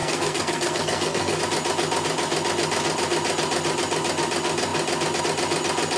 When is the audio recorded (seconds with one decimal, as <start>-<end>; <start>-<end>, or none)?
1.4-6.0